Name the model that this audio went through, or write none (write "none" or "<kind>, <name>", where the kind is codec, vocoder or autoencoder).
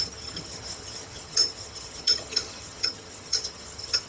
vocoder, HiFi-GAN